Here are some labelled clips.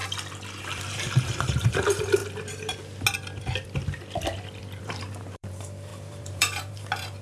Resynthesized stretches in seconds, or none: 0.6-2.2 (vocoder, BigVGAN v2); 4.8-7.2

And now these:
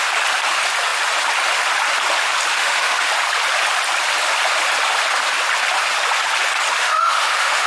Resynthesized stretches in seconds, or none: 2.5-3.1 (autoencoder, DAC-VAE); 6.8-7.7

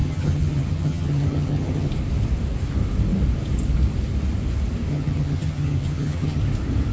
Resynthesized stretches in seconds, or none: 0.0-1.9 (vocoder, HiFi-GAN); 4.9-6.4

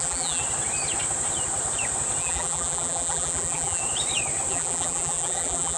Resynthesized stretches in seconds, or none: 0.0-0.4 (vocoder, BigVGAN v2); 2.2-3.8; 4.5-5.8

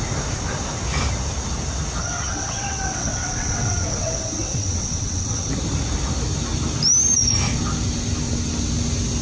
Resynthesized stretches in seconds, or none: 2.0-5.5 (vocoder, WaveNeXt)

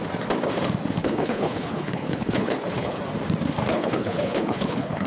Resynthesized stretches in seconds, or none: 1.0-3.0 (codec, HILCodec); 3.7-5.1

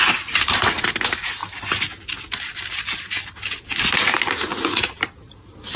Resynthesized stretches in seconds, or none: 4.5-5.0 (vocoder, Vocos)